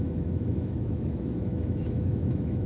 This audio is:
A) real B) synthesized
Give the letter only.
B